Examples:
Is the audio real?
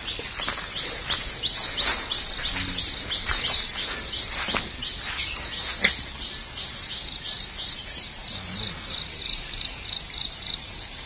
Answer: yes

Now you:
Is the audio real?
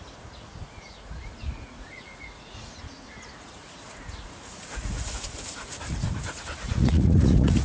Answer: no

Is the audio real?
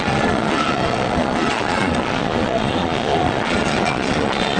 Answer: no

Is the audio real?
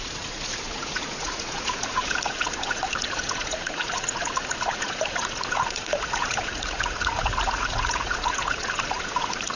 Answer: no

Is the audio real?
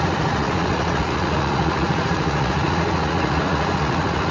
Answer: no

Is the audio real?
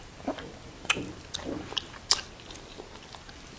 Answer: yes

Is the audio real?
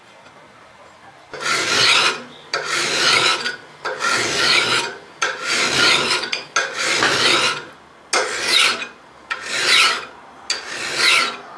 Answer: yes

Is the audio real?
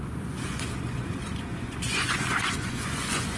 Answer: no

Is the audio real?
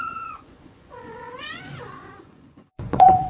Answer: no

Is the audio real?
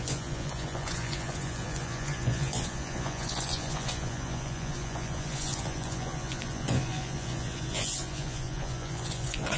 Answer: no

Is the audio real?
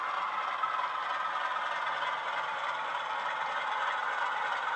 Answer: yes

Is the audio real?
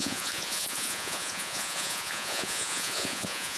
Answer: no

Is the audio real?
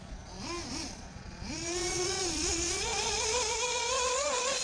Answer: no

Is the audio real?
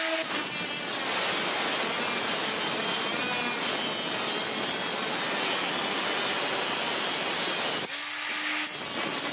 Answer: yes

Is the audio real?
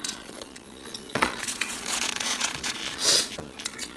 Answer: no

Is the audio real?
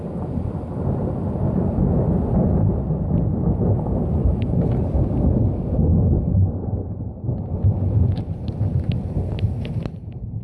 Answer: yes